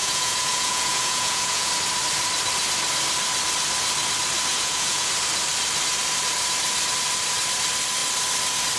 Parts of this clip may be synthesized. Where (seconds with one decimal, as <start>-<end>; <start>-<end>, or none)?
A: 0.0-1.7; 4.5-5.1